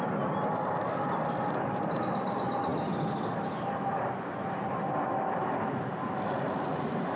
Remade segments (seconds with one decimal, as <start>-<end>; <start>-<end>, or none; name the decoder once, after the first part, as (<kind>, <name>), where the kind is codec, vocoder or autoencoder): none